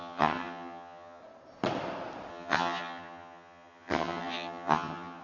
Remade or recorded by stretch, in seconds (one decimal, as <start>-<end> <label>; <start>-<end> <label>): 0.0-1.2 remade; 1.2-2.3 recorded; 2.3-5.2 remade